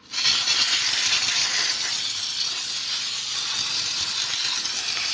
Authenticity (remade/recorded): recorded